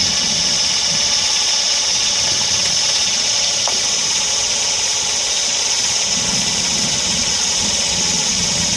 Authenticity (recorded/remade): remade